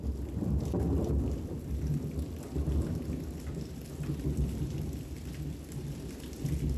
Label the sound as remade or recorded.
recorded